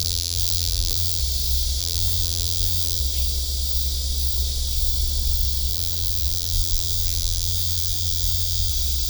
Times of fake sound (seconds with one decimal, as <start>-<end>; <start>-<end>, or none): 0.0-1.2; 1.8-3.0; 5.7-8.7